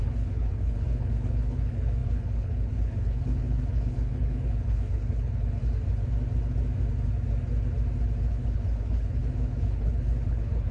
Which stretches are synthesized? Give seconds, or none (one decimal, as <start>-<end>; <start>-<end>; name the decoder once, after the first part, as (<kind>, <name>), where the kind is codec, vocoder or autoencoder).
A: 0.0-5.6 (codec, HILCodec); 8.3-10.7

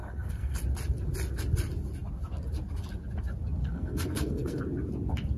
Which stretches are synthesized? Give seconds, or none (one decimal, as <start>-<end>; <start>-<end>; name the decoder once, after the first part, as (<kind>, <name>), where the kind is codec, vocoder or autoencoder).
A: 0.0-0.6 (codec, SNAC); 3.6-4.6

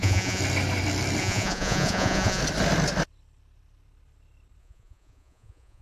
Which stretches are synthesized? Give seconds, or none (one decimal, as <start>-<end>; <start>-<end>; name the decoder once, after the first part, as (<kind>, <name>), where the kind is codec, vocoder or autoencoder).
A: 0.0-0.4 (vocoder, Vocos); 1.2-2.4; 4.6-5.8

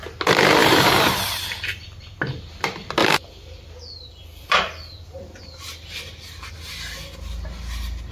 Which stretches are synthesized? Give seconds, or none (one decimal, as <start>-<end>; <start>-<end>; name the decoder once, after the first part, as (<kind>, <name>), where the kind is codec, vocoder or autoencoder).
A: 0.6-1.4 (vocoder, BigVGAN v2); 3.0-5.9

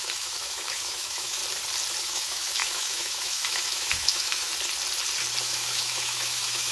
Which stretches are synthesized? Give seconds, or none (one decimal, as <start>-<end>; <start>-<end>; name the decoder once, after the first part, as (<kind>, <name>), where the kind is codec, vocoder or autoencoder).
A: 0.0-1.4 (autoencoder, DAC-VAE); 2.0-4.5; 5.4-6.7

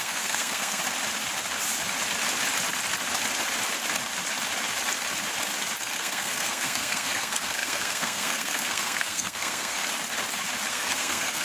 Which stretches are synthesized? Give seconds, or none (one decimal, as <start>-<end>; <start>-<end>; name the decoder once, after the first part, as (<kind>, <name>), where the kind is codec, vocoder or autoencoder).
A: 0.0-0.8 (codec, SNAC); 5.8-9.8; 10.7-11.4

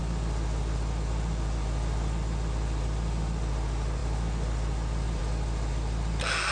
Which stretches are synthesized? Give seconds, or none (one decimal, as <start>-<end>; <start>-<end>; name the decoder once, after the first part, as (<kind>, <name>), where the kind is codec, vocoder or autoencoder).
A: none